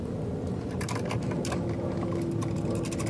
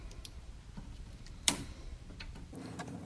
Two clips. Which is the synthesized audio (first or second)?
second